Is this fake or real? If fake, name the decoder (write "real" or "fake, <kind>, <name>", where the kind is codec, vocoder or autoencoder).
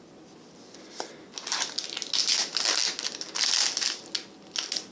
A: real